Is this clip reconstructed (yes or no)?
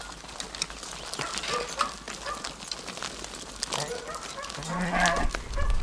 no